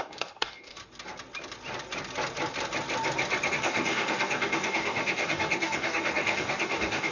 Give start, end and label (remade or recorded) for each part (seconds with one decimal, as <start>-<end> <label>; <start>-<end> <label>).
0.0-0.8 remade; 0.8-3.5 recorded; 3.5-7.1 remade